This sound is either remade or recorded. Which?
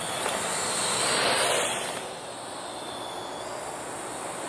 recorded